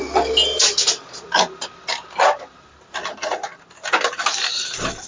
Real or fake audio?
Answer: real